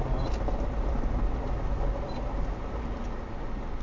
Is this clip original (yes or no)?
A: yes